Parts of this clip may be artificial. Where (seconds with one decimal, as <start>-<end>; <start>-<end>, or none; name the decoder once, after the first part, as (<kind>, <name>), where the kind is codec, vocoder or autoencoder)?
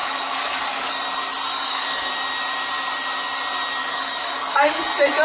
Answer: 0.0-0.9 (codec, DAC); 1.5-2.1; 3.8-4.8